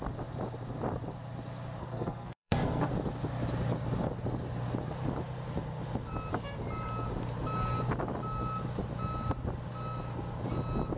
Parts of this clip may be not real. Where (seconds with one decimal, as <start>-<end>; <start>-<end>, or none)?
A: 1.8-2.9